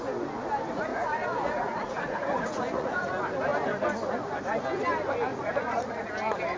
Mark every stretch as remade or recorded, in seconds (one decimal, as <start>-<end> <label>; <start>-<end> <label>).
0.0-0.9 recorded; 0.9-3.1 remade; 3.1-5.3 recorded; 5.3-6.1 remade; 6.1-6.6 recorded